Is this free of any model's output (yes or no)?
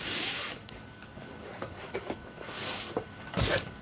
no